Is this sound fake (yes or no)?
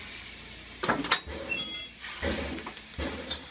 no